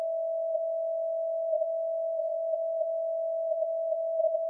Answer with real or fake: fake